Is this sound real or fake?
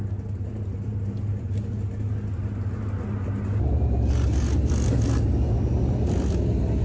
real